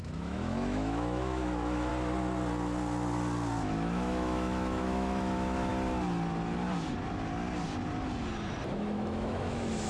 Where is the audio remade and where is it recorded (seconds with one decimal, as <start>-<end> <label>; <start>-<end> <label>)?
0.0-1.9 remade; 1.9-3.6 recorded; 3.6-5.7 remade; 5.7-8.7 recorded; 8.7-9.9 remade